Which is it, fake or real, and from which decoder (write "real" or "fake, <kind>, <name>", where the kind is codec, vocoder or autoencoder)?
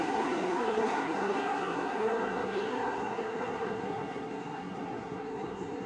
fake, codec, SNAC